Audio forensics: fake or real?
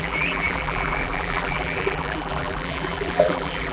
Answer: fake